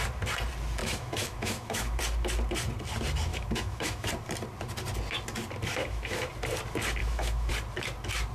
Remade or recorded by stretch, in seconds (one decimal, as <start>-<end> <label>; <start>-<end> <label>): 0.0-0.8 recorded; 0.8-2.0 remade; 2.0-3.3 recorded; 3.3-4.1 remade; 4.1-5.8 recorded; 5.8-6.3 remade; 6.3-7.0 recorded; 7.0-7.5 remade; 7.5-8.3 recorded